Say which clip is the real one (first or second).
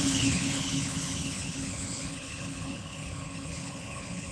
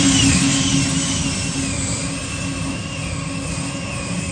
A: second